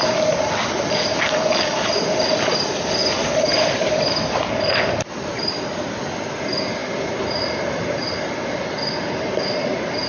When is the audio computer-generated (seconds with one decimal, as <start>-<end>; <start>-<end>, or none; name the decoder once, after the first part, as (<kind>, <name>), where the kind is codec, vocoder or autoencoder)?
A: none